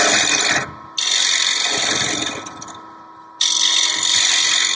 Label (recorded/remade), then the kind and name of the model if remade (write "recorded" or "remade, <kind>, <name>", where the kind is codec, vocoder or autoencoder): recorded